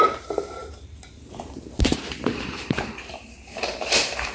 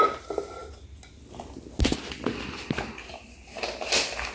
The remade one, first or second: first